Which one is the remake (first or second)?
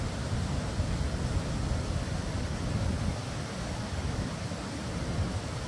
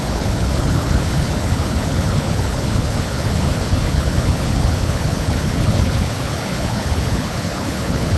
second